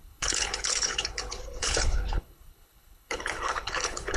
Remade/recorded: remade